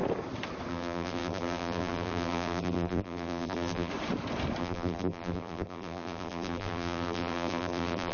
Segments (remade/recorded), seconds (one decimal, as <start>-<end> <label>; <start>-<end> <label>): 0.0-0.7 recorded; 0.7-3.9 remade; 3.9-4.6 recorded; 4.6-8.1 remade